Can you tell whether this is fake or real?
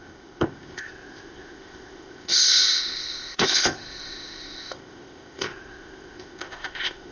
fake